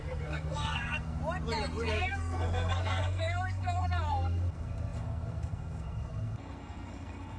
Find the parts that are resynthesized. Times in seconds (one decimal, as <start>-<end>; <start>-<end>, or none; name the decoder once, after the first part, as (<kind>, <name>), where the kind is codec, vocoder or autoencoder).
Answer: 0.0-1.2 (codec, SNAC); 1.8-7.4